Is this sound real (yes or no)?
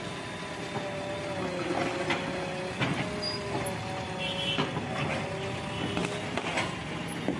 yes